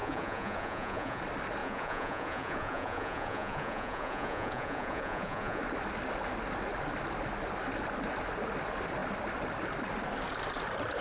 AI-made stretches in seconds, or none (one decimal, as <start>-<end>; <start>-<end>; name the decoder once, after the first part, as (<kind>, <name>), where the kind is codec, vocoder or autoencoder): 0.0-1.2 (vocoder, Vocos); 1.6-5.6